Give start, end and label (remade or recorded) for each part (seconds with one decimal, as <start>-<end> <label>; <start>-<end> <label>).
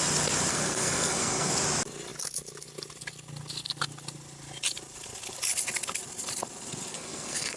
0.0-0.5 recorded; 0.5-1.5 remade; 1.5-6.9 recorded; 6.9-7.6 remade